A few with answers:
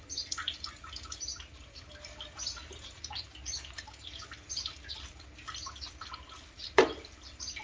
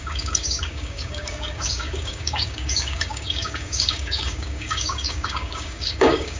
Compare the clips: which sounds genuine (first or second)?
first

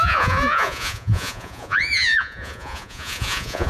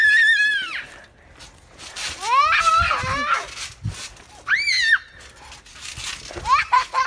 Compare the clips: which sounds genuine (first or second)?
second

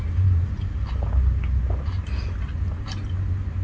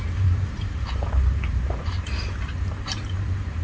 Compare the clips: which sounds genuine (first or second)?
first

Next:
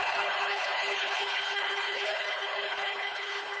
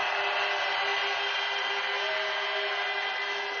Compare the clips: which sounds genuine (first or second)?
second